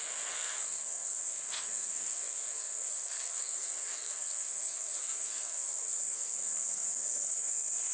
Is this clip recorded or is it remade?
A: remade